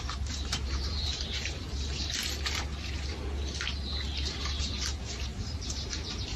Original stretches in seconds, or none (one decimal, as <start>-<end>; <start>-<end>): 1.1-4.6